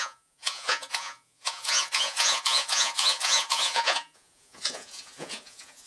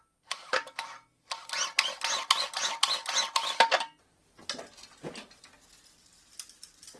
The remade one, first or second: first